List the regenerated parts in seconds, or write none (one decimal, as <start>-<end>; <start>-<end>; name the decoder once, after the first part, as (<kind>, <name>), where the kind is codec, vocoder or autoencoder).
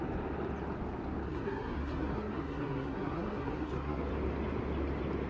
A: 1.3-4.1 (codec, SNAC)